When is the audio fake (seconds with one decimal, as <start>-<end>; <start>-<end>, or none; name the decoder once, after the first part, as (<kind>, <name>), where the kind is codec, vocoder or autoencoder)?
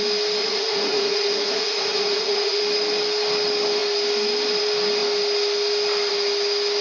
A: 0.4-2.6 (vocoder, Vocos)